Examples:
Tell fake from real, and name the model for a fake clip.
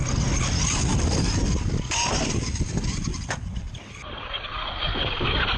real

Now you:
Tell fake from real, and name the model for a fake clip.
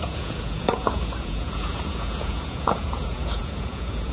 fake, vocoder, Vocos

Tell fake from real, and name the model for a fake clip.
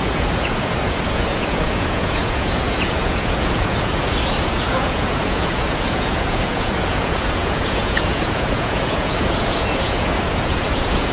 fake, vocoder, Vocos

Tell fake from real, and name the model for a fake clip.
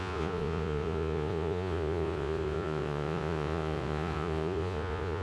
fake, vocoder, Vocos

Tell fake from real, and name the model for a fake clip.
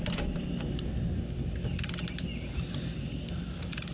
real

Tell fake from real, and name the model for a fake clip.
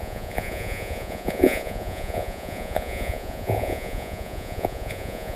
fake, vocoder, Vocos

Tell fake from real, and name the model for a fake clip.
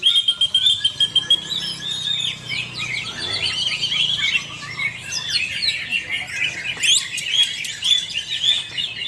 real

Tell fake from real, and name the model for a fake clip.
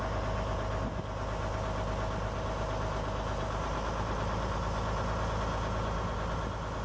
real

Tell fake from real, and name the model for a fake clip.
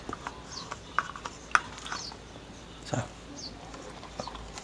real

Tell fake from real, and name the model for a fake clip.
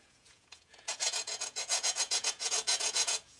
fake, vocoder, Vocos